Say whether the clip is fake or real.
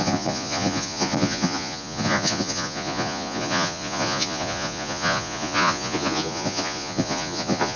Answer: fake